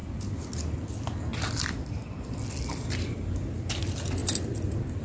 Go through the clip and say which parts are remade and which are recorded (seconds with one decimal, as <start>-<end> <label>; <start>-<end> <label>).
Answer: 0.0-4.2 recorded; 4.2-5.0 remade